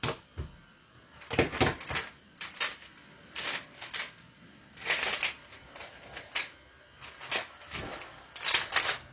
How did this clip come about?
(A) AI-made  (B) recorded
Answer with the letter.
B